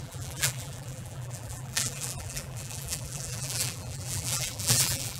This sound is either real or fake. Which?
fake